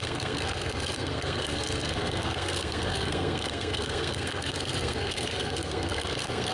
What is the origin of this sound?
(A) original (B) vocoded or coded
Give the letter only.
B